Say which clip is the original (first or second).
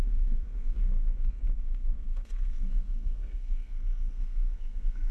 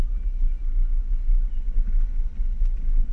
second